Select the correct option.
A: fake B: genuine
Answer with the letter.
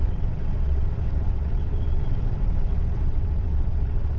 A